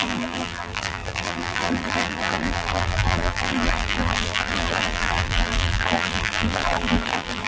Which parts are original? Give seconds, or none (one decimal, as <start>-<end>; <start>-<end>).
none